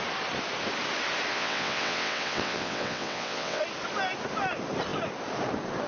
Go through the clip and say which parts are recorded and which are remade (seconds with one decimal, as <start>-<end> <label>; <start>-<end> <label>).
0.0-1.3 recorded; 1.3-3.6 remade; 3.6-5.9 recorded